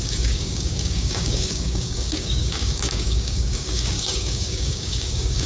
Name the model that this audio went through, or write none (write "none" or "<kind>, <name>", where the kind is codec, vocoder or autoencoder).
codec, DAC